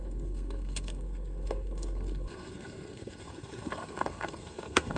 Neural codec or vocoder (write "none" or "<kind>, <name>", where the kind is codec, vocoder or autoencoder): codec, SNAC